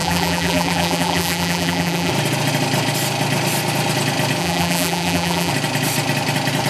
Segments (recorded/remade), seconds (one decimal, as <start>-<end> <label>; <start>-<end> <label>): 0.0-2.1 remade; 2.1-4.4 recorded; 4.4-5.5 remade; 5.5-6.7 recorded